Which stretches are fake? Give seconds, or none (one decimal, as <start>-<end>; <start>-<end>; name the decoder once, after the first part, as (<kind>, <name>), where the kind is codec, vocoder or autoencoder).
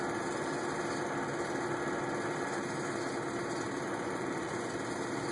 3.9-4.7 (vocoder, Vocos)